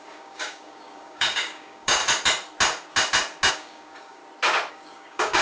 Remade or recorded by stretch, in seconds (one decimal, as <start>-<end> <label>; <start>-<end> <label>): 0.0-2.0 remade; 2.0-3.5 recorded; 3.5-4.2 remade; 4.2-4.7 recorded; 4.7-5.4 remade